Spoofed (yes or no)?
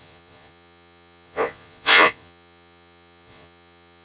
yes